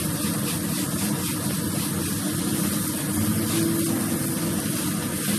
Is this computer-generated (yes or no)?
no